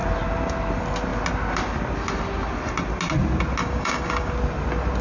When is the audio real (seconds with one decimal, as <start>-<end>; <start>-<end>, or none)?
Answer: 0.0-3.6; 4.3-5.0